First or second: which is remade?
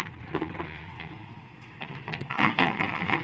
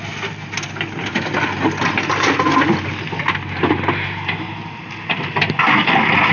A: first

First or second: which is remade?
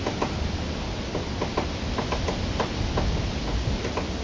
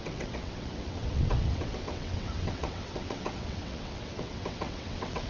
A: second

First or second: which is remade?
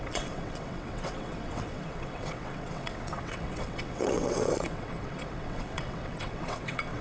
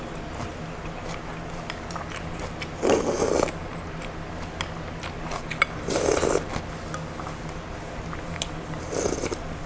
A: first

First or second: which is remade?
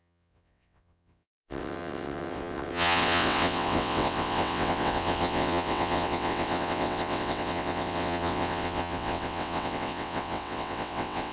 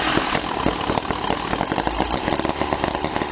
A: first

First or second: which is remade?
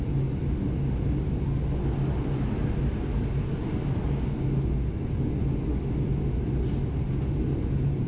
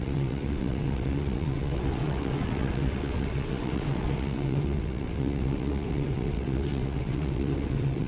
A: second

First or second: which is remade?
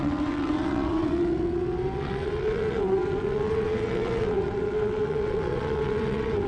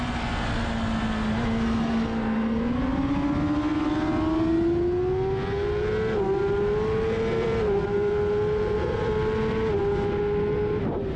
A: first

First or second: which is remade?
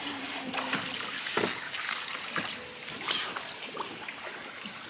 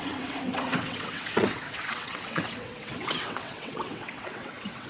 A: second